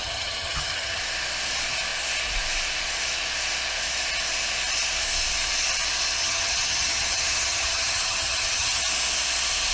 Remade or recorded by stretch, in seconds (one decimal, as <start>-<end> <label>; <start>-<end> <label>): 0.0-1.0 remade; 1.0-6.2 recorded; 6.2-8.8 remade; 8.8-9.7 recorded